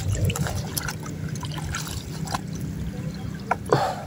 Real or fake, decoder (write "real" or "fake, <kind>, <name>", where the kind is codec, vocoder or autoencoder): real